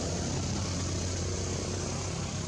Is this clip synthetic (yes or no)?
no